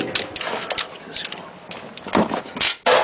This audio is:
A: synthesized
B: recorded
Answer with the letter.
B